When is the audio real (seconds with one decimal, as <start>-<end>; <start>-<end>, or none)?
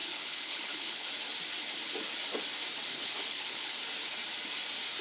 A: 1.1-2.9; 3.7-5.0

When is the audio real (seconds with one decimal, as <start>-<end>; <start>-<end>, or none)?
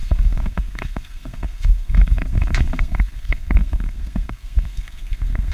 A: none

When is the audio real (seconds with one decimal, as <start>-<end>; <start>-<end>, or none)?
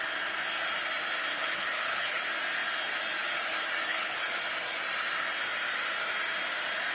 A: 0.0-1.3; 2.2-3.9; 4.4-6.9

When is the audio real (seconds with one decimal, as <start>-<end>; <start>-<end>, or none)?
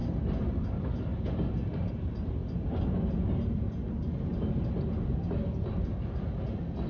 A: 0.0-6.9